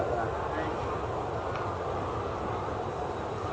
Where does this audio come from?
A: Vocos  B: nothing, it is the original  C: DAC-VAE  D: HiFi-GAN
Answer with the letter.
B